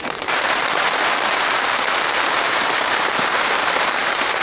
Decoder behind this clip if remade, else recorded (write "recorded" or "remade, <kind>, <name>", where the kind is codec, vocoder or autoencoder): remade, vocoder, BigVGAN v2